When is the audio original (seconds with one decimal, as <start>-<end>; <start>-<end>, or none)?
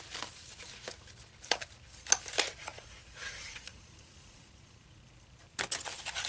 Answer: 0.0-2.6; 5.0-6.3